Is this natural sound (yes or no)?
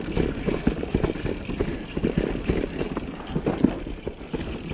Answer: yes